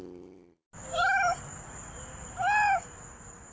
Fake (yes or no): no